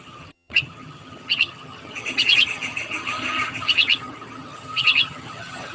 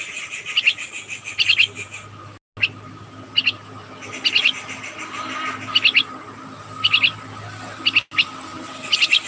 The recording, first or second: second